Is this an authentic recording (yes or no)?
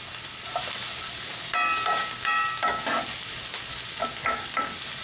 yes